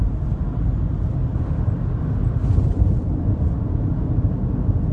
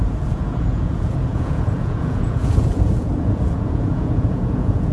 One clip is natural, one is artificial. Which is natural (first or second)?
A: first